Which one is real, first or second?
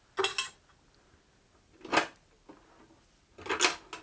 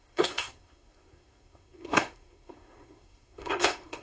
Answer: first